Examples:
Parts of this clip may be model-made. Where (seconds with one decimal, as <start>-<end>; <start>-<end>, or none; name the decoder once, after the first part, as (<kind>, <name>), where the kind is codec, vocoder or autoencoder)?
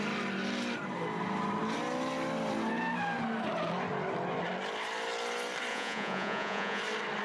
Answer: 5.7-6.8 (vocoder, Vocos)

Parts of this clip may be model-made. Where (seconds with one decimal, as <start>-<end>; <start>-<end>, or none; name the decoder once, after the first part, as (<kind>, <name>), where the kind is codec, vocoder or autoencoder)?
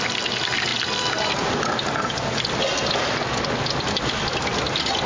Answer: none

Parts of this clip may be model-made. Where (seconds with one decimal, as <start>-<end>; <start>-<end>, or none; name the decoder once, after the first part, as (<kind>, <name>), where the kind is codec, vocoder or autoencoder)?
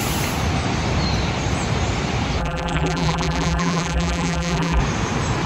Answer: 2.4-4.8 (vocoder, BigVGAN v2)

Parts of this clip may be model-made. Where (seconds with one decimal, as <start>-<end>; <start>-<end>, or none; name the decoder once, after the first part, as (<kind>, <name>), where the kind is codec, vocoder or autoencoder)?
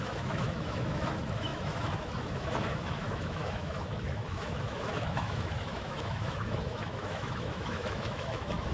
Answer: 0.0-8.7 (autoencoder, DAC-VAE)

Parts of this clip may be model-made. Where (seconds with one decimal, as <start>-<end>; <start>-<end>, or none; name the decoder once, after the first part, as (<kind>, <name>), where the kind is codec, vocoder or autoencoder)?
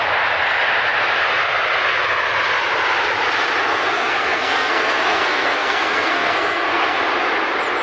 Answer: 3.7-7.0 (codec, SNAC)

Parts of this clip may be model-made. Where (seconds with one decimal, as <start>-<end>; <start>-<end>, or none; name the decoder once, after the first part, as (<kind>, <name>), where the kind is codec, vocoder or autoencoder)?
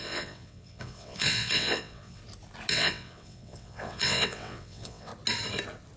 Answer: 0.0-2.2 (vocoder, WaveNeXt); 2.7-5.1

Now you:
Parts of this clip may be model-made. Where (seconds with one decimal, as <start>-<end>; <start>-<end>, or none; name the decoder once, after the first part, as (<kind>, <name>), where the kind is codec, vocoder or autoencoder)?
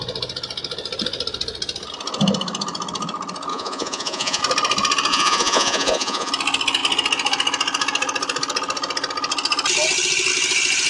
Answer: 3.5-4.4 (vocoder, Vocos); 5.1-6.3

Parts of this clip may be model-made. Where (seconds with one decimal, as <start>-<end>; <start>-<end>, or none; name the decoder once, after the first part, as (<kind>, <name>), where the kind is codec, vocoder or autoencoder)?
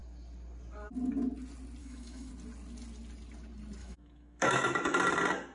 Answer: 1.8-2.3 (autoencoder, DAC-VAE); 3.8-5.0